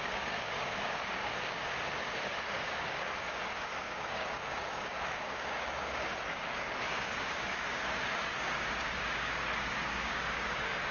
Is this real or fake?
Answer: fake